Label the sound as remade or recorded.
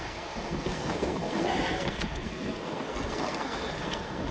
remade